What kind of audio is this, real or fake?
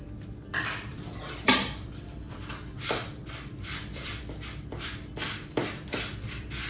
fake